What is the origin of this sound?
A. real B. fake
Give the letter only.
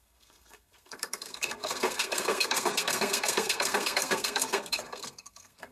B